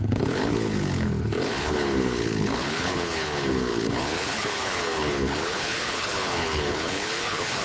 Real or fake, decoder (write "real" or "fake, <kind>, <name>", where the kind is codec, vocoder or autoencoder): fake, codec, HILCodec